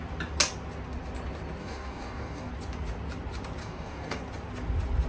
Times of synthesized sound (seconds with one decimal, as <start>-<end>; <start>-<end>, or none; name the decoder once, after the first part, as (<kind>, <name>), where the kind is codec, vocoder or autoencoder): 1.6-2.5 (codec, DAC); 3.6-4.2